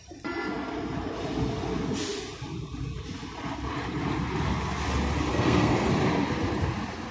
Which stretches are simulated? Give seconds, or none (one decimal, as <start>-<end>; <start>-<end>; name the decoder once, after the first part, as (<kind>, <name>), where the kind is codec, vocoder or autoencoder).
5.3-5.9 (codec, SNAC)